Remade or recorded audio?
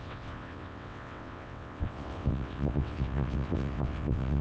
remade